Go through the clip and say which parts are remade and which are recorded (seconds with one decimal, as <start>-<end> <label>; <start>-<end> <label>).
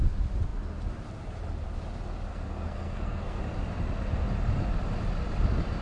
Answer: 0.0-2.3 recorded; 2.3-3.4 remade; 3.4-5.8 recorded